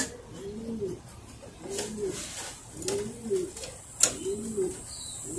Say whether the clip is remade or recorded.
recorded